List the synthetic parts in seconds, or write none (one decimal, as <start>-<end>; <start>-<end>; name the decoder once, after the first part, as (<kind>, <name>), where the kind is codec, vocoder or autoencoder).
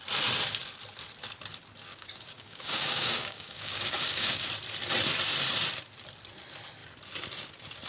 1.9-4.4 (codec, DAC)